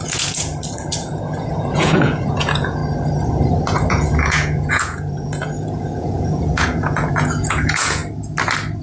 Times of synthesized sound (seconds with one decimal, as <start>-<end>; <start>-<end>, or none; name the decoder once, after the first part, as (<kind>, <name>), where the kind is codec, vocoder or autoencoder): 0.0-0.5 (vocoder, Vocos); 1.0-2.8; 3.9-8.0